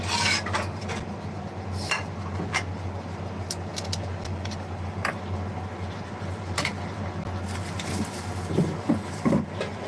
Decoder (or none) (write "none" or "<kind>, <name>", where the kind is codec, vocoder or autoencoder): none